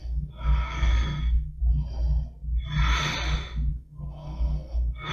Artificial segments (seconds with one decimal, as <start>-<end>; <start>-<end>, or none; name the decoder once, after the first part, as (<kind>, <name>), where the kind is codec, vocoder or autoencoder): 0.0-1.6 (codec, SNAC); 3.7-5.1